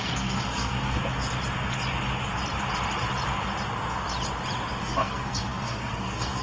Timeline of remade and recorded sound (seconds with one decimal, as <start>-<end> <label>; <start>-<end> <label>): 0.0-1.0 remade; 1.0-4.8 recorded; 4.8-6.4 remade